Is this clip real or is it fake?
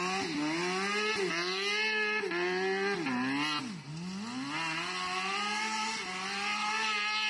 real